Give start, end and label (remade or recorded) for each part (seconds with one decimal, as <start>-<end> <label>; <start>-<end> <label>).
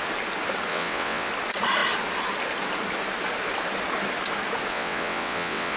0.0-0.7 recorded; 0.7-1.3 remade; 1.3-4.7 recorded; 4.7-5.8 remade